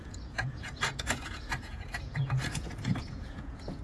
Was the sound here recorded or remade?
remade